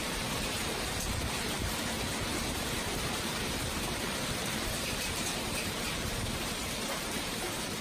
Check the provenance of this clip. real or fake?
fake